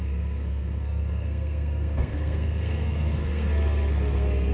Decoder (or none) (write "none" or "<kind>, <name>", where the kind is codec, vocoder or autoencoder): codec, SNAC